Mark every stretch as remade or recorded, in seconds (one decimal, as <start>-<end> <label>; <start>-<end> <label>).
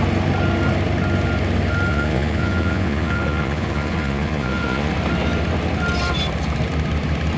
0.0-1.9 recorded; 1.9-4.9 remade; 4.9-7.4 recorded